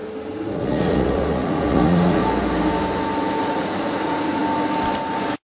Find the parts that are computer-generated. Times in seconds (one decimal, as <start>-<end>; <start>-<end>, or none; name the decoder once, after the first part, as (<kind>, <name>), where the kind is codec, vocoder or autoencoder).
0.5-2.2 (vocoder, Vocos); 3.4-4.4